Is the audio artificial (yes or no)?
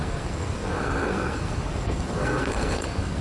yes